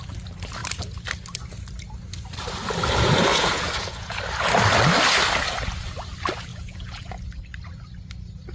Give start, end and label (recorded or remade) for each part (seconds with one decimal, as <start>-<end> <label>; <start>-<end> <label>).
0.0-3.3 recorded; 3.3-4.2 remade; 4.2-6.5 recorded; 6.5-7.2 remade; 7.2-8.5 recorded